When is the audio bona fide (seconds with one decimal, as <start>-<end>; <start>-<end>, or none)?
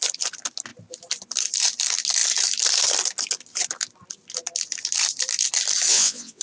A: 0.0-5.9